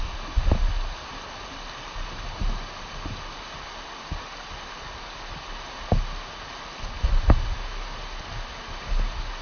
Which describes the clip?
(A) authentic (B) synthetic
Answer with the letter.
A